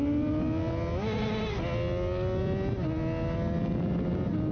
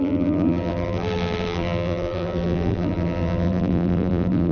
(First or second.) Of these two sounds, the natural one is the first